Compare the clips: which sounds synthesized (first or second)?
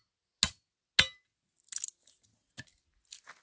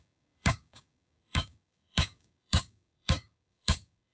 second